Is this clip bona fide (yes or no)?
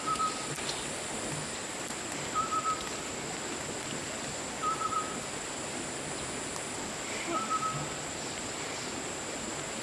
yes